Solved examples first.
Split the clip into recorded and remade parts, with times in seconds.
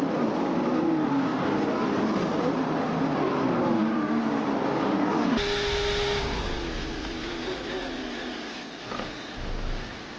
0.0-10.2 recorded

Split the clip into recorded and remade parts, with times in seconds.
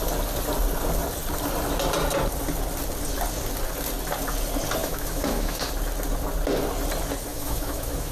0.0-4.8 recorded; 4.8-5.7 remade; 5.7-7.3 recorded; 7.3-8.1 remade